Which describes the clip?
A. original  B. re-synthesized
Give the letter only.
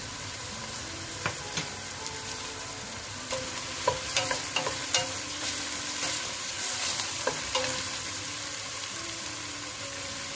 B